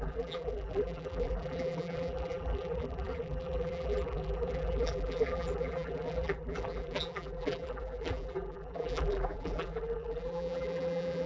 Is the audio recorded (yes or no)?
no